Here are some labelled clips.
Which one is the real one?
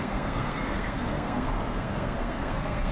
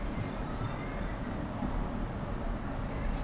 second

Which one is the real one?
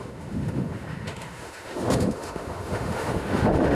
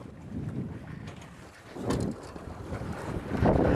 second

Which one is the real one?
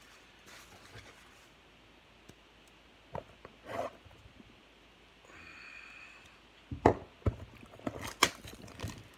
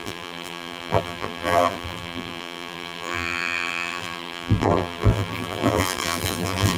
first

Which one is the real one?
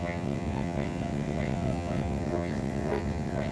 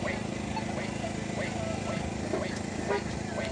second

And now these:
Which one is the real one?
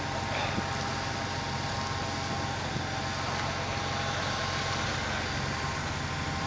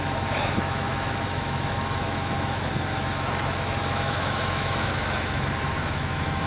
first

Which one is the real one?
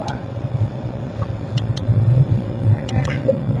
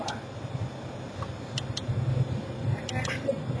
second